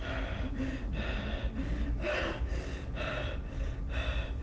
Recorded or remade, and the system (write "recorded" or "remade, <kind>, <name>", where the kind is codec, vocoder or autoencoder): recorded